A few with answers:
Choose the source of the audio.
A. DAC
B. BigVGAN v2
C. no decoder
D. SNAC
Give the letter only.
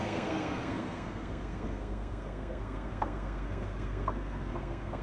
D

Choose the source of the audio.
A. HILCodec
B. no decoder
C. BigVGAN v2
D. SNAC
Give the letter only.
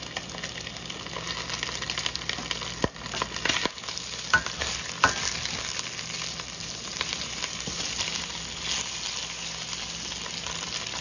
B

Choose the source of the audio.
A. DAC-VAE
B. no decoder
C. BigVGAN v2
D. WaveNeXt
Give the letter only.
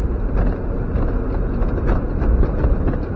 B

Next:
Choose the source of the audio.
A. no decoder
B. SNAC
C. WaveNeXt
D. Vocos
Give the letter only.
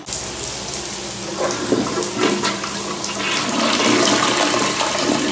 A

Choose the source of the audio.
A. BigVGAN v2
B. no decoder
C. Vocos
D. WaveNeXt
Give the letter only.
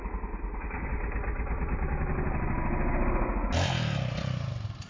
B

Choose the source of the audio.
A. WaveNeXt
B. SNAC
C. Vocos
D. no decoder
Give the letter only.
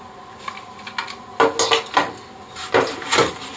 D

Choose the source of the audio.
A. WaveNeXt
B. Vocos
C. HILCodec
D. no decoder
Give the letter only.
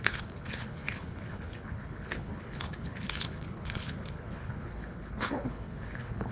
C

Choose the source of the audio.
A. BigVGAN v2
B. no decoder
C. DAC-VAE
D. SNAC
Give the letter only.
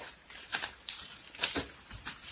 A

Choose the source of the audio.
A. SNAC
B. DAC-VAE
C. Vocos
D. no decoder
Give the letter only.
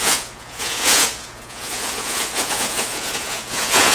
C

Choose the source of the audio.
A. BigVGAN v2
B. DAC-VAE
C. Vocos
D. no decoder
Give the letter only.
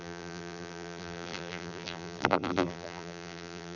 A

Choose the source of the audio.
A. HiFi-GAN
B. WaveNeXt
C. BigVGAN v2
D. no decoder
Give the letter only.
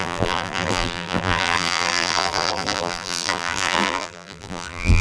C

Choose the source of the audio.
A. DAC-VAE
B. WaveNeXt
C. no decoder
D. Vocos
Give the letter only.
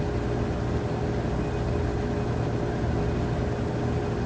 C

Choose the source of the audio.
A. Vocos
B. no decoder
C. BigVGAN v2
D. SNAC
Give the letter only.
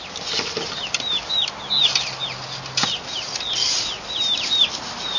B